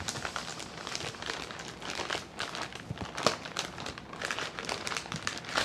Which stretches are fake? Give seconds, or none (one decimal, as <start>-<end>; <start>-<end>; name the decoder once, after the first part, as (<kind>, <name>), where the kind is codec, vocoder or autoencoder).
none